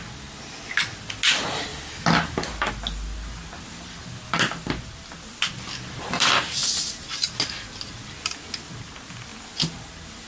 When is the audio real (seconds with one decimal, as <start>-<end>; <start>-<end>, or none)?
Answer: 0.0-10.3